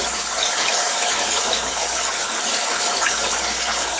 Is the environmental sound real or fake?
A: fake